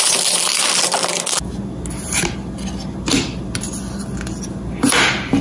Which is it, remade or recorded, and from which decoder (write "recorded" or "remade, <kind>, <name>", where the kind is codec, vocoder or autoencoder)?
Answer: recorded